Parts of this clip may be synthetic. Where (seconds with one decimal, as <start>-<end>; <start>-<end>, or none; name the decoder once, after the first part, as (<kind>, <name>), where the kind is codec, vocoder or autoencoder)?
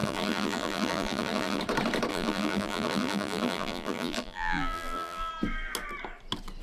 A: 0.0-1.6 (vocoder, BigVGAN v2); 2.1-5.3